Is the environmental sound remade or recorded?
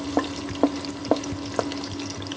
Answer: recorded